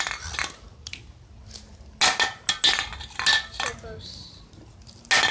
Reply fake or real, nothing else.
real